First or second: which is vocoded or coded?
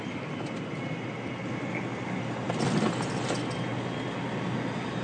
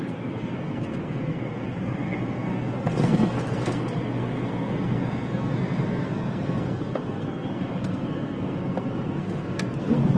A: second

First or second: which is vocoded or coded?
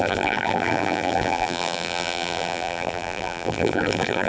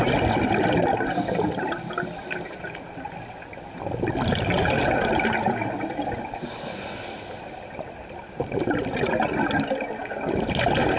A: first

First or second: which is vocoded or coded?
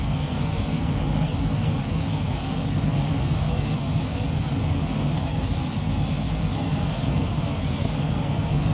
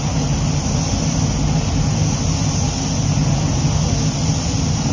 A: first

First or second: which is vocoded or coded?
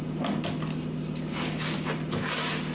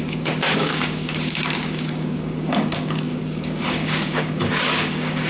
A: second